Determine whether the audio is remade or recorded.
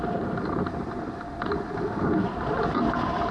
recorded